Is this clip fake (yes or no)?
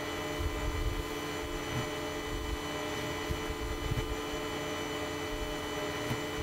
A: no